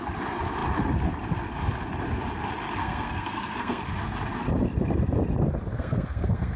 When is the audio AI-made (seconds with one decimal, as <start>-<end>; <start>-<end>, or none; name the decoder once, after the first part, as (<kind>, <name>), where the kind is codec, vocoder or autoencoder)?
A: 2.8-3.8 (codec, SNAC); 5.7-6.6